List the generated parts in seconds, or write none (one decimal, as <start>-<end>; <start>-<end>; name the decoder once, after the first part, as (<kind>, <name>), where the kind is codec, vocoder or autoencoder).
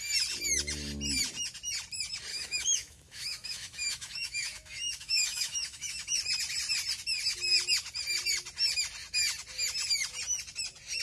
2.3-6.2 (autoencoder, DAC-VAE)